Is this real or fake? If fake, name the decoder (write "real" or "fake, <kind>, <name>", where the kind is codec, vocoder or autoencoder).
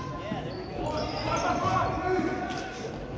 real